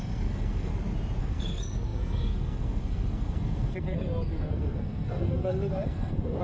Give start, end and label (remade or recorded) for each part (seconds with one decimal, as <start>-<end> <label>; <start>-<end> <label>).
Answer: 0.0-0.7 remade; 0.7-1.2 recorded; 1.2-6.4 remade